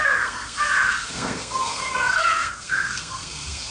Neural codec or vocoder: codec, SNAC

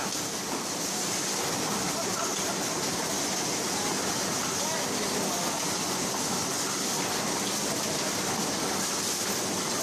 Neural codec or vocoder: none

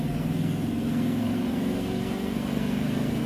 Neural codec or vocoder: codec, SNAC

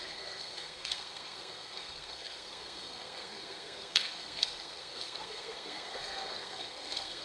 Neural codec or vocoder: codec, SNAC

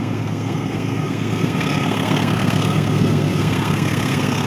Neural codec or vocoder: codec, SNAC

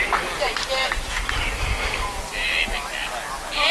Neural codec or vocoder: none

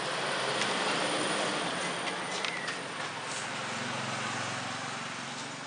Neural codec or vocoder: none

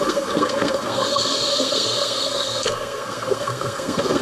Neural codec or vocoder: codec, SNAC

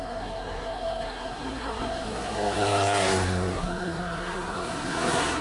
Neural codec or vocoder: codec, SNAC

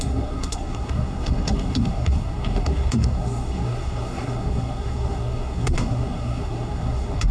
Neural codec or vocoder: codec, SNAC